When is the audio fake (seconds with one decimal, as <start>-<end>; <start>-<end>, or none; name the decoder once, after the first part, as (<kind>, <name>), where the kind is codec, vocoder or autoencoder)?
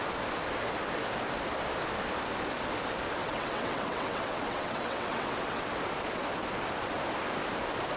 3.2-5.7 (vocoder, WaveNeXt)